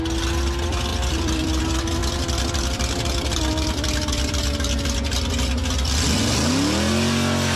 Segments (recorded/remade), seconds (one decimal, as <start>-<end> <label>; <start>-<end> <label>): 0.0-0.9 recorded; 0.9-1.6 remade; 1.6-2.0 recorded; 2.0-4.0 remade; 4.0-7.6 recorded